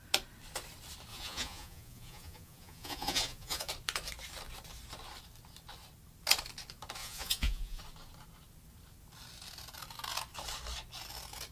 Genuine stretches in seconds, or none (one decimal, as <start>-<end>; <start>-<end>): 0.0-1.1; 3.7-7.0; 7.8-11.5